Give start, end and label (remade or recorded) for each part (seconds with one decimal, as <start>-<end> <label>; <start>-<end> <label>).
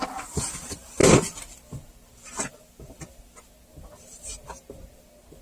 0.0-5.4 recorded